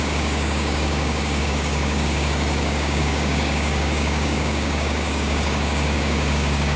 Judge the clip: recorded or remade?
remade